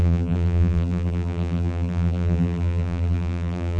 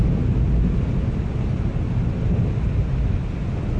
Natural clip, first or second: second